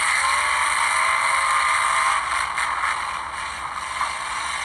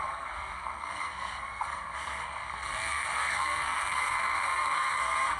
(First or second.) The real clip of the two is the first